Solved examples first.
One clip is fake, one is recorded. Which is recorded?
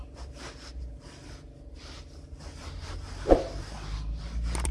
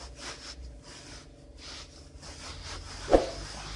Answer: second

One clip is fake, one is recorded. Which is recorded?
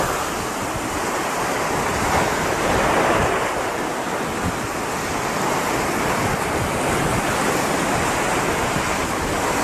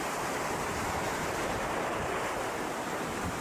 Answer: first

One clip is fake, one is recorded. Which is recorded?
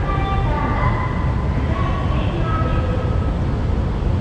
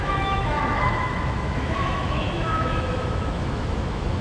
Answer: first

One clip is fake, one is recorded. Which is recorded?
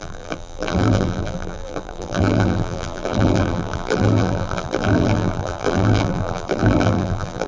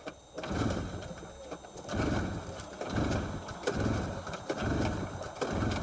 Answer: second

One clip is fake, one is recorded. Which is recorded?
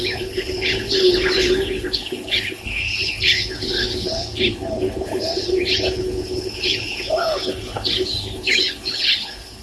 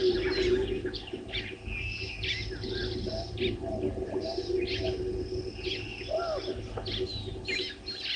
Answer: second